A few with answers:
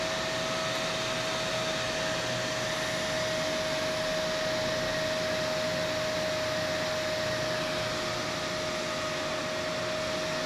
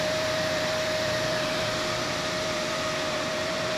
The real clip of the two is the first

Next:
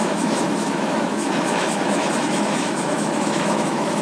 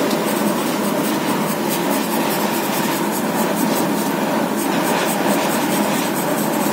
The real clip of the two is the second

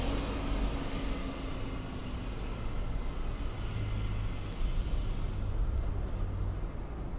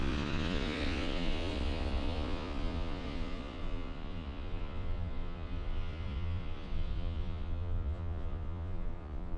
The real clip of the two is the first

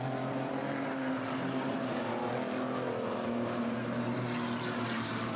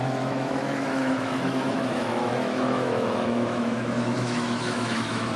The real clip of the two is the first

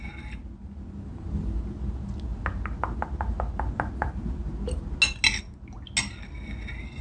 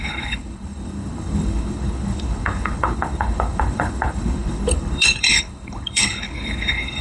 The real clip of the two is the first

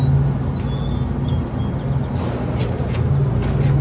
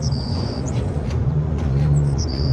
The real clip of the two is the first